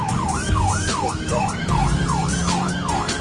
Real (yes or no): no